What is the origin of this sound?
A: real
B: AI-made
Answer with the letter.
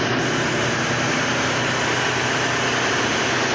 A